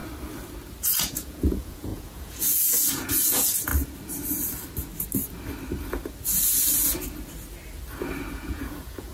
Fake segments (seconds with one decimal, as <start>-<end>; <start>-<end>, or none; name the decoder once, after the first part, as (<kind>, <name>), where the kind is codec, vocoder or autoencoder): 0.8-3.7 (vocoder, Vocos); 8.3-9.1